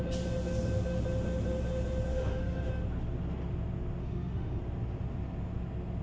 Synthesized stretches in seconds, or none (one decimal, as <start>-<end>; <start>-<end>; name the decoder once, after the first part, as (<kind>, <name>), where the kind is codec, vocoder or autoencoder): 2.1-2.7 (autoencoder, DAC-VAE); 4.0-4.6